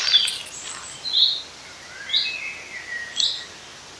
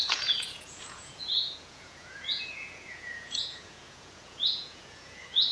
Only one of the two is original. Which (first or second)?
first